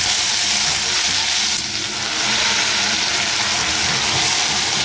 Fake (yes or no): no